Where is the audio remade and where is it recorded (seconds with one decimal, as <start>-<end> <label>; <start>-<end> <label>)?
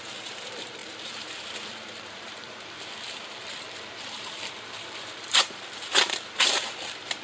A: 0.0-7.2 remade